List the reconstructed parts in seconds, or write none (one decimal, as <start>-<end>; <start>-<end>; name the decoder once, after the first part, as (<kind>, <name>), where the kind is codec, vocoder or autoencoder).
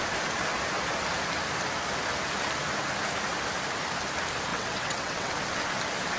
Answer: 4.5-5.3 (vocoder, WaveNeXt)